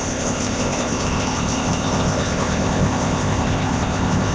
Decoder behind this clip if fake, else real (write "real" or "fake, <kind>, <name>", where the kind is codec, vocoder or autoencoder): fake, codec, ZipCodec